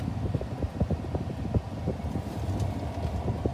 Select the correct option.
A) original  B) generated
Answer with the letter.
A